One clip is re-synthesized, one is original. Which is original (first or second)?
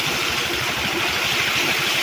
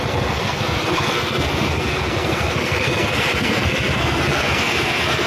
first